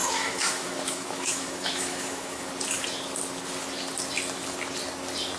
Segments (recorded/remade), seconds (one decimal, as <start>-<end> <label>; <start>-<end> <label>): 0.0-2.5 remade; 2.5-5.4 recorded